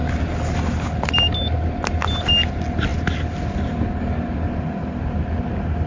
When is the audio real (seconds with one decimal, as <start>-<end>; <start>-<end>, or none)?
0.0-5.9